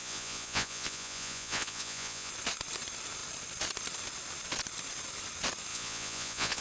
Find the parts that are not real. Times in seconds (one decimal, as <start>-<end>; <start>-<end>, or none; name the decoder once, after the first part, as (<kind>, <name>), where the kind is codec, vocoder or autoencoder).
0.0-2.3 (vocoder, Vocos); 5.7-6.6

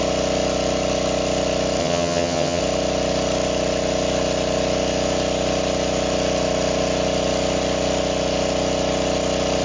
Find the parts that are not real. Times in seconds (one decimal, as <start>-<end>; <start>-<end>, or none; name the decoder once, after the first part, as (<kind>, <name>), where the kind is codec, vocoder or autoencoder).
1.8-2.6 (vocoder, HiFi-GAN)

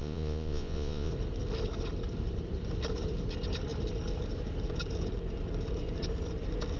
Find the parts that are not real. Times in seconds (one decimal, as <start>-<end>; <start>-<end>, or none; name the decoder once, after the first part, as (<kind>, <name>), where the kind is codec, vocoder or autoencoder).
0.0-1.1 (vocoder, Vocos)